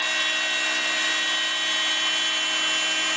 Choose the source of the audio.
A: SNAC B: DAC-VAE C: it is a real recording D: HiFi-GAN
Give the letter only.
C